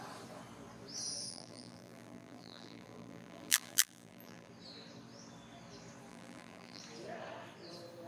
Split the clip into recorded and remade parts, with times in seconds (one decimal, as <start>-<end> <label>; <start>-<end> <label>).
0.0-1.3 recorded; 1.3-4.5 remade; 4.5-6.1 recorded; 6.1-6.8 remade; 6.8-8.1 recorded